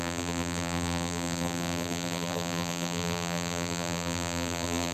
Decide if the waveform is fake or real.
fake